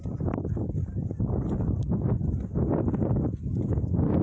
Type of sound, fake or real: real